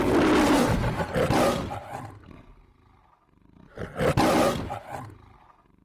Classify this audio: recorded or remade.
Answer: recorded